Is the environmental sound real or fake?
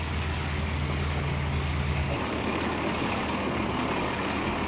fake